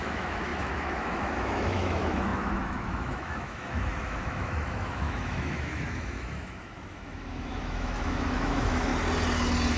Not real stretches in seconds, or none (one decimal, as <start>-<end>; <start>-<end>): 0.0-8.9